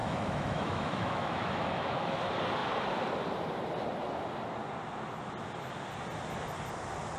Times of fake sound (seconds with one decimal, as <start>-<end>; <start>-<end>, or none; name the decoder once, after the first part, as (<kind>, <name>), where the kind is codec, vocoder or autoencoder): 0.0-2.2 (autoencoder, DAC-VAE)